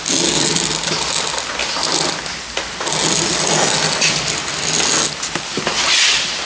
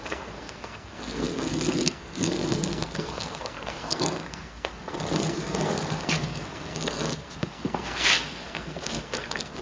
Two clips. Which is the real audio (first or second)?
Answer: first